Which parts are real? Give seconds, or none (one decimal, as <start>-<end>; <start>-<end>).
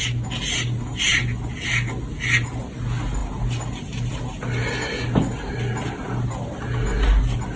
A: 0.0-7.6